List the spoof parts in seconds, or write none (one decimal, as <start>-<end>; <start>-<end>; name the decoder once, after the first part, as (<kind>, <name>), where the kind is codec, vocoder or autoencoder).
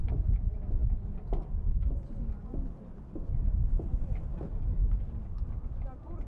none